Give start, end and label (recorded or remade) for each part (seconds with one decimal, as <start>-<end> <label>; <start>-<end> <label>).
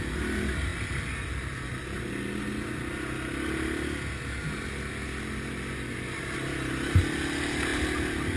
0.0-8.4 recorded